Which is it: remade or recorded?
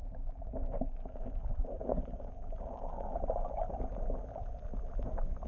recorded